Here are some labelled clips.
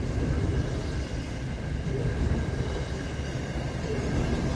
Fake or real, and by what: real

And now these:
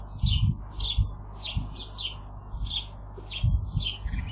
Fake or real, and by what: real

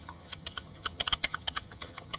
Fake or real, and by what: fake, vocoder, HiFi-GAN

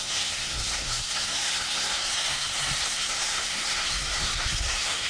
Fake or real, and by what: fake, codec, SNAC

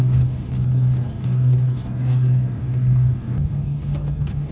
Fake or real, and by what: fake, codec, DAC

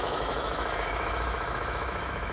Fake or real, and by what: fake, autoencoder, DAC-VAE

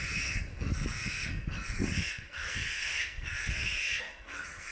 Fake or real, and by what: fake, codec, SNAC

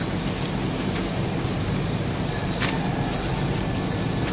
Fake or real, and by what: real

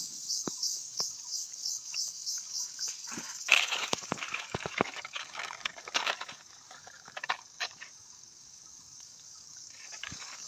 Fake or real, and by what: fake, codec, DAC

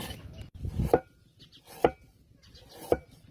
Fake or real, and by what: real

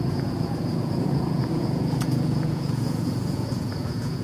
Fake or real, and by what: fake, vocoder, Vocos